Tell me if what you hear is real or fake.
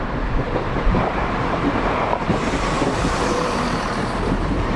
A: fake